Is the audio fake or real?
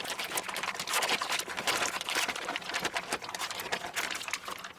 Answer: real